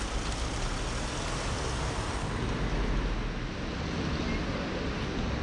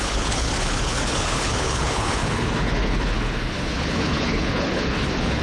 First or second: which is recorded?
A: first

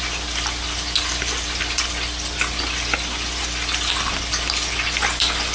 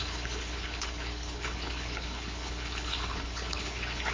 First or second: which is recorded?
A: first